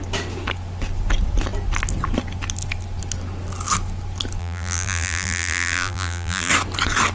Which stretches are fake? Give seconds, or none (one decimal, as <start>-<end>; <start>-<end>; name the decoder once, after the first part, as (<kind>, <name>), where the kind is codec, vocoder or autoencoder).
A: 4.4-6.5 (vocoder, BigVGAN v2)